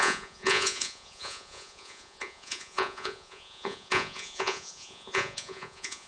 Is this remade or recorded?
remade